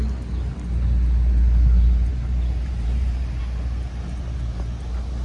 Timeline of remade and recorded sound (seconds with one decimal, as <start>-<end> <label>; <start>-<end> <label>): 0.0-2.1 recorded; 2.1-3.4 remade; 3.4-5.2 recorded